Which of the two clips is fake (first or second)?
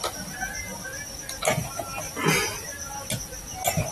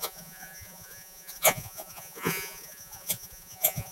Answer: second